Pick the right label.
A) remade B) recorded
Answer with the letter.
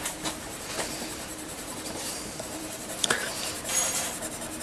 A